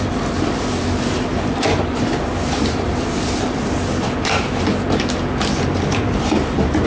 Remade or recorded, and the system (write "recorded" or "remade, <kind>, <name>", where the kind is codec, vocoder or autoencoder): remade, vocoder, BigVGAN v2